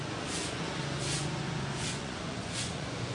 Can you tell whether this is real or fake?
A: fake